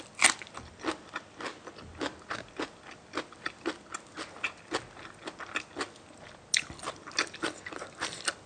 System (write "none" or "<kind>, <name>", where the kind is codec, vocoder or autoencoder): none